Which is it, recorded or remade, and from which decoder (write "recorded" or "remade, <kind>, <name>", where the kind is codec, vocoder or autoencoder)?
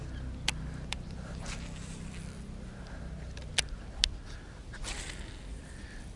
recorded